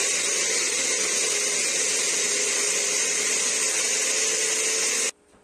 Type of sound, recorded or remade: recorded